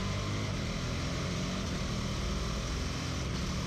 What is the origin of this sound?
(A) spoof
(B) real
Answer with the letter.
B